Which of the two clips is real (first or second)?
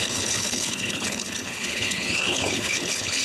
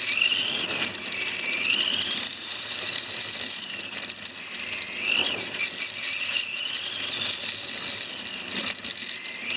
second